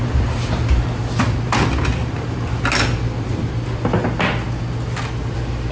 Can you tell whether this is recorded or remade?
recorded